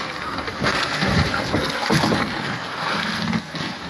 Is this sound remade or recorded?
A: remade